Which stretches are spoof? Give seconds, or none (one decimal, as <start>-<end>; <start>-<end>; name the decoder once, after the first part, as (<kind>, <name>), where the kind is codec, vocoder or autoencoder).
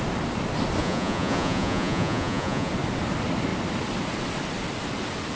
0.8-2.7 (vocoder, Vocos)